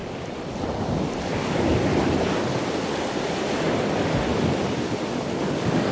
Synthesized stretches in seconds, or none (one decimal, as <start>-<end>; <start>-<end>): 1.2-1.9; 5.4-5.9